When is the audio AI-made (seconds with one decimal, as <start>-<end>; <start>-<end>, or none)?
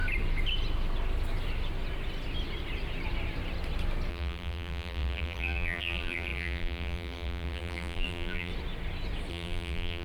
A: 4.1-8.5; 9.3-10.0